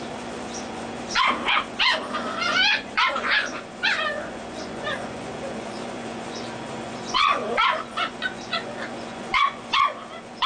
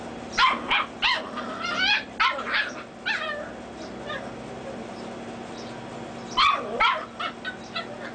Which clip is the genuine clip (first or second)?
second